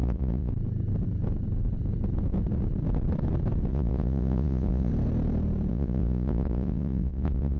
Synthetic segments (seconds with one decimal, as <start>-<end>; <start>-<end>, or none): 0.0-0.5; 3.7-4.9; 5.7-7.6

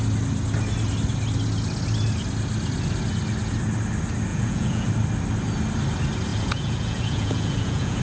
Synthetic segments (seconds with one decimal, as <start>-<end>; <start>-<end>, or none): 4.3-4.9; 6.3-8.0